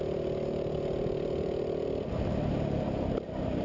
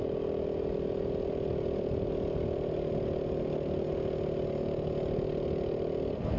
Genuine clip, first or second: second